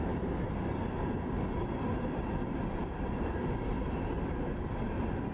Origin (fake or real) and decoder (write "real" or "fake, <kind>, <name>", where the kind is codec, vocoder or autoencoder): real